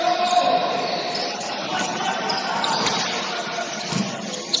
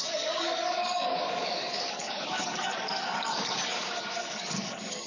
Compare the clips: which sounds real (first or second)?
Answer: first